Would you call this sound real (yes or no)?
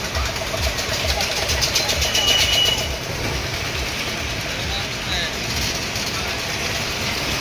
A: yes